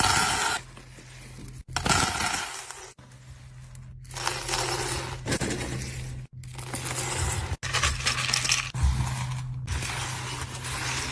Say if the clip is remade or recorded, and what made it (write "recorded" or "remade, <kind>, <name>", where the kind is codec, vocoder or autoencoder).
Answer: recorded